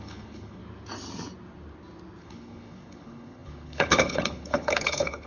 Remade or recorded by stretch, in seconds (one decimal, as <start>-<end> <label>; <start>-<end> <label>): 0.0-0.6 remade; 0.6-2.2 recorded; 2.2-5.3 remade